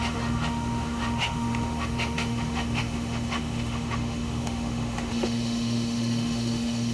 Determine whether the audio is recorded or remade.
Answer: remade